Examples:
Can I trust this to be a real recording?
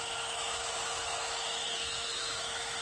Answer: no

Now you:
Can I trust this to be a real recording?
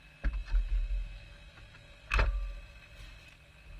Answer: yes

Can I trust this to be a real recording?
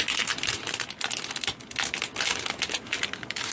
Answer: yes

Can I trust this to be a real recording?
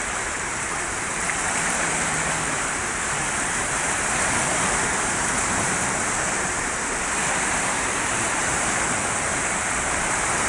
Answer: no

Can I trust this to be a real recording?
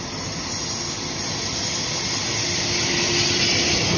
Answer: yes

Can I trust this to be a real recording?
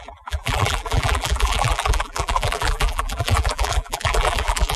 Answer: no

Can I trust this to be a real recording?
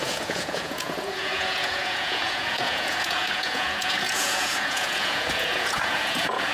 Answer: no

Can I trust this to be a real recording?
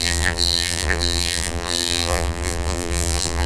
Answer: no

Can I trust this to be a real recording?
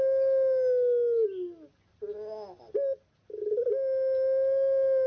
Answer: yes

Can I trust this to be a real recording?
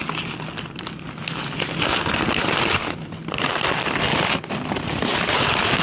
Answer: yes